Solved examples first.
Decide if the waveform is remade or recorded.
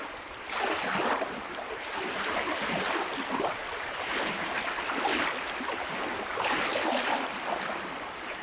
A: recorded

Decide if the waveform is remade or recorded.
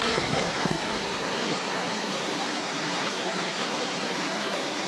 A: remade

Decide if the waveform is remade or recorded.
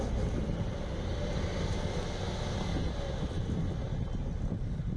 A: recorded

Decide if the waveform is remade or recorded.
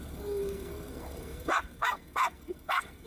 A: remade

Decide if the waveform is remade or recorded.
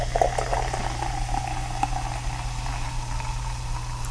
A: recorded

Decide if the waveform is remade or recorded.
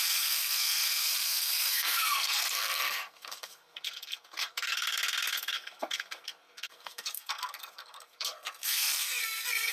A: remade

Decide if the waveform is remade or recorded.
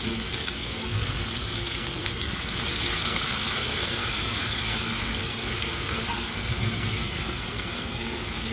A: remade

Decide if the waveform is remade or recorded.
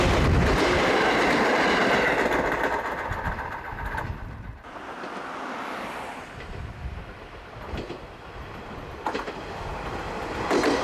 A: recorded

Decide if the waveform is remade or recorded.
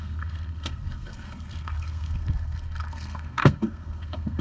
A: remade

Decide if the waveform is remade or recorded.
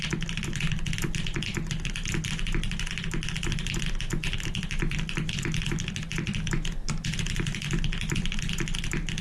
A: recorded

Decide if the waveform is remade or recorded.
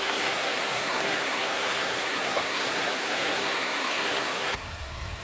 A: remade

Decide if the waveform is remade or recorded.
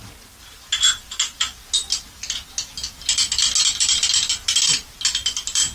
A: recorded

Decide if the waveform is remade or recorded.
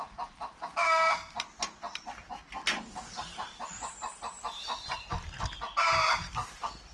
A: recorded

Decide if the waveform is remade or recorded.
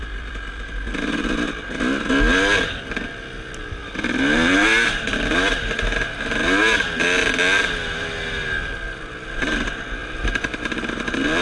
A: recorded